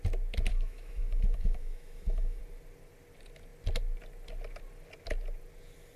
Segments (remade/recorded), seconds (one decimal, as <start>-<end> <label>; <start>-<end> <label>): 0.0-0.5 recorded; 0.5-2.4 remade; 2.4-6.0 recorded